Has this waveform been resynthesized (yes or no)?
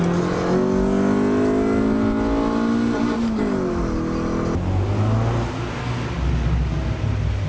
no